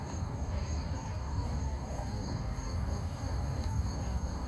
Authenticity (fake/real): fake